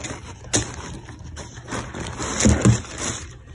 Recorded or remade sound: recorded